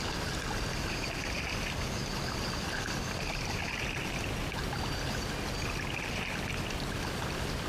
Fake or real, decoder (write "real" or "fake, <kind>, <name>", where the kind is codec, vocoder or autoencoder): real